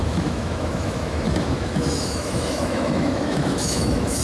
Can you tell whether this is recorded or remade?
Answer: remade